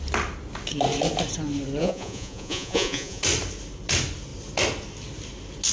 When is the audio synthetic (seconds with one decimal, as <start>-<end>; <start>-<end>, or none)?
1.8-3.2